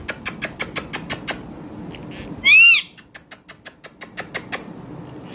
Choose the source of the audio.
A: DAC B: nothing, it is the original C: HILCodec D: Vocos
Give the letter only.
B